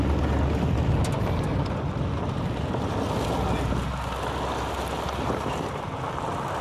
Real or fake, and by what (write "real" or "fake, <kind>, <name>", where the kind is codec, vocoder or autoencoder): real